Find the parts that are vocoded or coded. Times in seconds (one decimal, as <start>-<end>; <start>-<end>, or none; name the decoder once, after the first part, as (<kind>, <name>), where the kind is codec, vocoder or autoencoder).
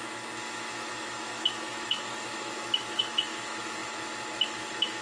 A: 0.0-5.0 (autoencoder, DAC-VAE)